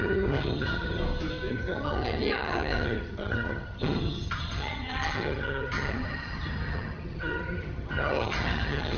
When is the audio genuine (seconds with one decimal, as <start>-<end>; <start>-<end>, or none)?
1.0-1.5

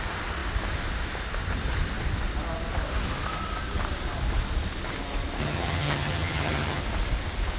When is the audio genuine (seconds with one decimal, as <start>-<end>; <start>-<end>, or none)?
0.0-5.4; 6.8-7.6